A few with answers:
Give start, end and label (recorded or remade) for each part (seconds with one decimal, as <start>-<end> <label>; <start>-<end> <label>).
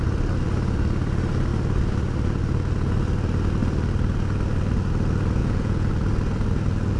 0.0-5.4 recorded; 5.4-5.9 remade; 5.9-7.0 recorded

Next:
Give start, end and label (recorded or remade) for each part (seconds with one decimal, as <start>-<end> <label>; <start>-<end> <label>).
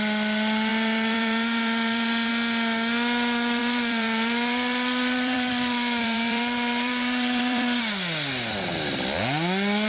0.0-0.7 recorded; 0.7-2.3 remade; 2.3-3.6 recorded; 3.6-7.8 remade; 7.8-9.9 recorded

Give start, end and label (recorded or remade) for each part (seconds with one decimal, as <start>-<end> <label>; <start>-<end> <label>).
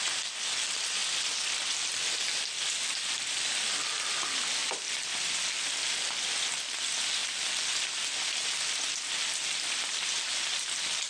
0.0-11.1 recorded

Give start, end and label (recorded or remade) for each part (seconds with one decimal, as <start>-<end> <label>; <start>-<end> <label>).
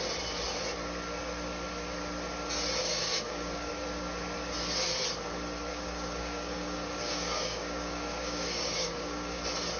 0.0-2.8 recorded; 2.8-3.7 remade; 3.7-5.7 recorded; 5.7-9.4 remade; 9.4-9.8 recorded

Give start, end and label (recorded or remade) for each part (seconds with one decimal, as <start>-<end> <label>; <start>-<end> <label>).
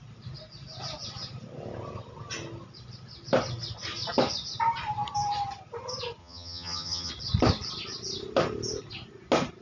0.0-6.2 recorded; 6.2-7.1 remade; 7.1-9.6 recorded